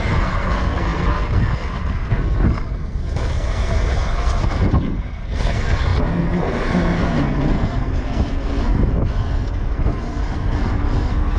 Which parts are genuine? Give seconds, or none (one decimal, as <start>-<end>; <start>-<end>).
none